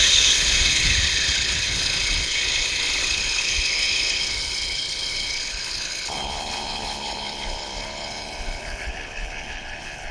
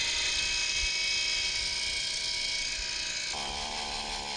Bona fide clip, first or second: second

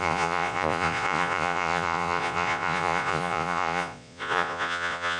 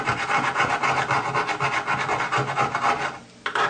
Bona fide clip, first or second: second